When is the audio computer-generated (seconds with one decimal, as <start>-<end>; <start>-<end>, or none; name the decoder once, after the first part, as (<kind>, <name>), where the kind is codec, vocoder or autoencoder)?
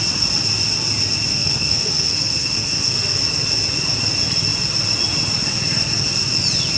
1.3-3.2 (codec, SNAC)